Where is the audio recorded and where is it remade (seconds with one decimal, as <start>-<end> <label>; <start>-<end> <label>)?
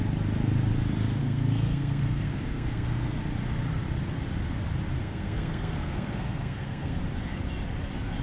0.0-1.2 recorded; 1.2-3.2 remade; 3.2-5.0 recorded; 5.0-7.0 remade; 7.0-8.2 recorded